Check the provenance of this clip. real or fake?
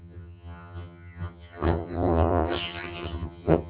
fake